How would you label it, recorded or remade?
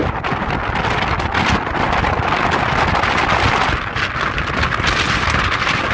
recorded